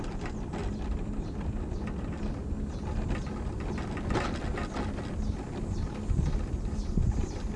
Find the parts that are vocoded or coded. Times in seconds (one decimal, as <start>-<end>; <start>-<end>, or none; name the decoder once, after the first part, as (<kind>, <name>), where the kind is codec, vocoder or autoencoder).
none